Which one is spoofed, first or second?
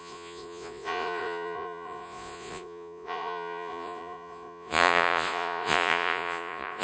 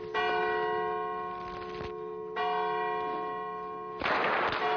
first